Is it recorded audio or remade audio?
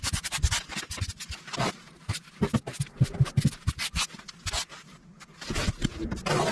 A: recorded